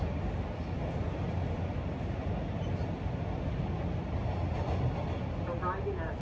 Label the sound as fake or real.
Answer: real